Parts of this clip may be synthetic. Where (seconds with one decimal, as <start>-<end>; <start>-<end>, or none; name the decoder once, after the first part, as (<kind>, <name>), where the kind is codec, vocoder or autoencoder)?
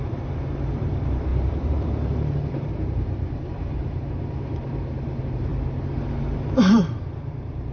0.0-5.5 (vocoder, BigVGAN v2); 6.0-7.7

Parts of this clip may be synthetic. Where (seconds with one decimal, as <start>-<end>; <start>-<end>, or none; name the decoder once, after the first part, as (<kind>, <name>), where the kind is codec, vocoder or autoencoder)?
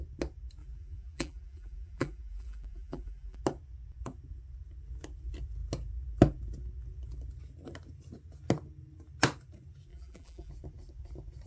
0.6-3.4 (vocoder, BigVGAN v2); 9.9-10.5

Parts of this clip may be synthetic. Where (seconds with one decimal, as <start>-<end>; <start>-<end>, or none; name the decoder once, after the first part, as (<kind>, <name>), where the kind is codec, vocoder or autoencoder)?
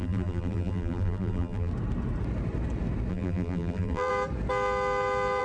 0.0-1.7 (vocoder, BigVGAN v2); 3.1-4.1